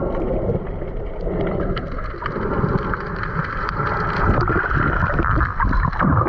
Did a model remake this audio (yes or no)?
no